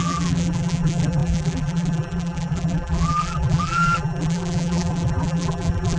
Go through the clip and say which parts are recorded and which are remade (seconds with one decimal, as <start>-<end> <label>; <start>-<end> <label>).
0.0-6.0 remade